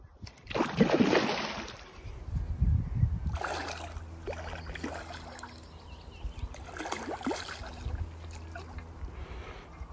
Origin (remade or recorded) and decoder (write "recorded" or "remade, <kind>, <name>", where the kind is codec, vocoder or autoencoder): recorded